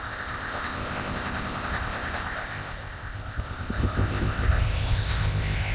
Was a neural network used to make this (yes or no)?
yes